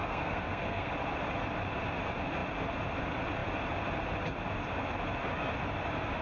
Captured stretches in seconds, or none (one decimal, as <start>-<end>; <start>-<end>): 0.9-6.2